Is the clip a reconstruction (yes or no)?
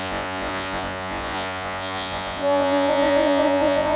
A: yes